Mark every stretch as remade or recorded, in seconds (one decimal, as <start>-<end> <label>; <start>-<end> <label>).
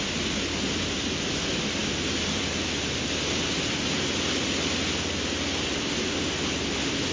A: 0.0-7.1 recorded